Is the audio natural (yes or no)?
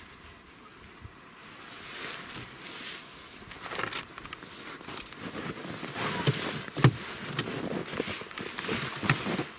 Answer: yes